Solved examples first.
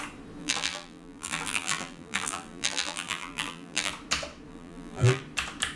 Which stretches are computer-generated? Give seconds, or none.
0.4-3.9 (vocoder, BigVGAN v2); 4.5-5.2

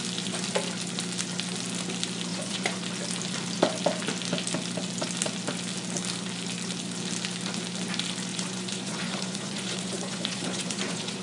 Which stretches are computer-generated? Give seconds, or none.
2.3-2.8 (vocoder, Vocos); 8.3-11.2

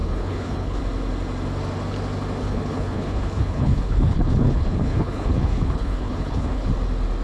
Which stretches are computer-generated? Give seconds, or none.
0.0-0.8 (codec, HILCodec); 2.4-6.7